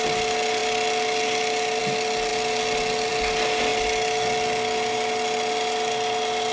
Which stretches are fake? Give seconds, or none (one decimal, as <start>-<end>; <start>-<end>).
none